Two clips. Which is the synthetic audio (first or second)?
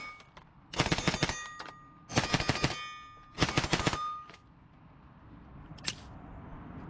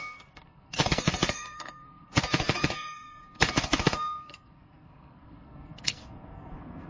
second